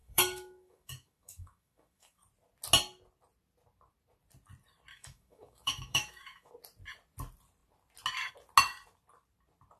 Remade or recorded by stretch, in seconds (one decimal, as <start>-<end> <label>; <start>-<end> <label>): 0.0-2.2 remade; 2.2-4.9 recorded; 4.9-6.5 remade; 6.5-9.8 recorded